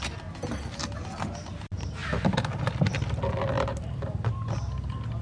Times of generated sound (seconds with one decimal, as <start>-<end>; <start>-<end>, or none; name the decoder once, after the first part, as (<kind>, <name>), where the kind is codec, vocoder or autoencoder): none